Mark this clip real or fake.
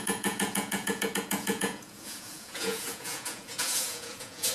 fake